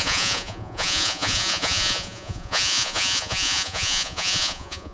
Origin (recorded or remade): remade